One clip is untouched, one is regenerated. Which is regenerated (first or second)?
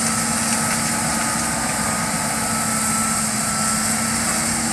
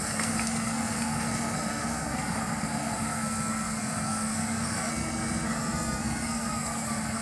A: second